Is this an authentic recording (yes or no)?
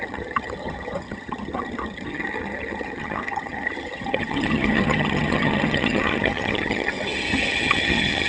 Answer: no